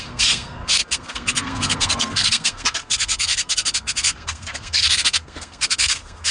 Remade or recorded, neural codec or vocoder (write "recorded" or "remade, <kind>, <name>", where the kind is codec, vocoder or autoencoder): remade, codec, SNAC